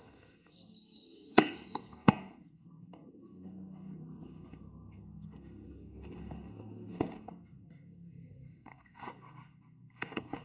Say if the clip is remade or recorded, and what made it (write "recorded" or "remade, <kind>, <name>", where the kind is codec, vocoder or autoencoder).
remade, codec, SNAC